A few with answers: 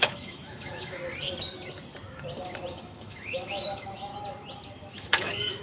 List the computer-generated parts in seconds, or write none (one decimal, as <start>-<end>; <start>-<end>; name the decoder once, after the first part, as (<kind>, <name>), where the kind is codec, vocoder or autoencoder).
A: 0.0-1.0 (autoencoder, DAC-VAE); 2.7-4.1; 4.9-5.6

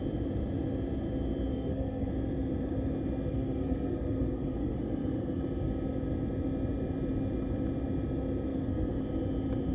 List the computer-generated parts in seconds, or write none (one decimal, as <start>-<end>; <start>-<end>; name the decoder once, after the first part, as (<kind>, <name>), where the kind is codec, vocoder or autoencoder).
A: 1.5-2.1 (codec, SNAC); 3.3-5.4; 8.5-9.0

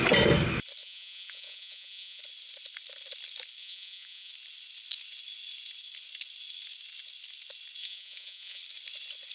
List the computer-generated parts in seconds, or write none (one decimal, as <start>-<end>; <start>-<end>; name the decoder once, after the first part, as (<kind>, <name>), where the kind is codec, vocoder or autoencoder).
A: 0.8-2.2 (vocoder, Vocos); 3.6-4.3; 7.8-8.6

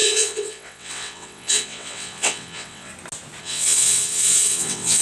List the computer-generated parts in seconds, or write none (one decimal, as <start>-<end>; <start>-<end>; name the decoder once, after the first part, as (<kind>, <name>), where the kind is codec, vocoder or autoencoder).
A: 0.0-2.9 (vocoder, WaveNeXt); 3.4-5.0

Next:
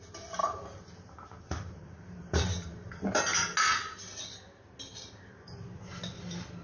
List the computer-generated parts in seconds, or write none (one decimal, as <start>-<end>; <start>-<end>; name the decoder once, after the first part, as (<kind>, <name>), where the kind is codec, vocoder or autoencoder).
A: 0.4-3.2 (vocoder, BigVGAN v2)

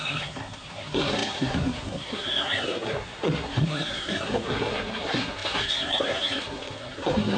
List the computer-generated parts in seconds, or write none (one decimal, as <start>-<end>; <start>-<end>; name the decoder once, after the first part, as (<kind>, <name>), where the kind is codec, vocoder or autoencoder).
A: 0.0-7.4 (codec, SNAC)